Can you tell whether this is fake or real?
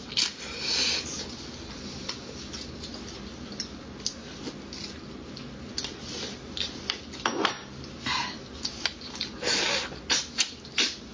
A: real